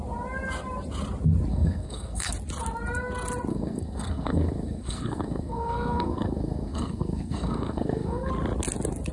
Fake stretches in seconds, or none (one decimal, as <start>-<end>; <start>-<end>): 1.5-2.3; 3.5-8.3